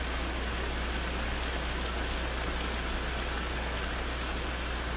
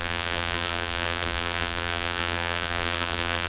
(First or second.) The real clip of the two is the first